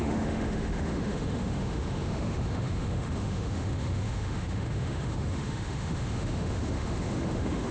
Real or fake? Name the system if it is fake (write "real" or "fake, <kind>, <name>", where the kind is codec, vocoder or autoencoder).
fake, autoencoder, DAC-VAE